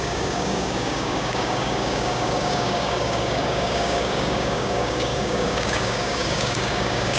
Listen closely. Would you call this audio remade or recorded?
remade